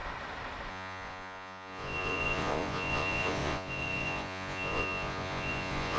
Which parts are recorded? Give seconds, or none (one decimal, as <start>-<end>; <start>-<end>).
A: 0.0-0.7